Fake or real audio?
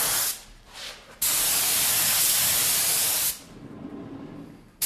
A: real